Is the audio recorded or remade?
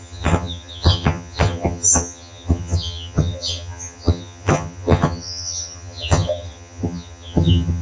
remade